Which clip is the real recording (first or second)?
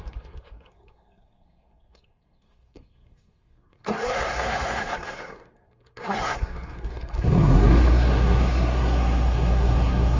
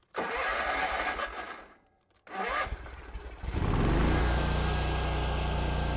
second